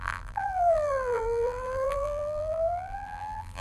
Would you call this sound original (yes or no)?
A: no